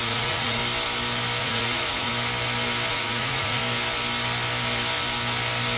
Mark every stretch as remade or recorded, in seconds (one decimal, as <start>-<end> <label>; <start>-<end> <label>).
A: 0.0-0.6 remade; 0.6-1.4 recorded; 1.4-2.1 remade; 2.1-2.9 recorded; 2.9-3.6 remade; 3.6-5.8 recorded